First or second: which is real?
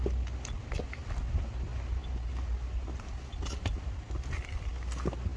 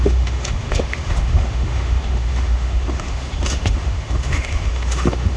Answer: first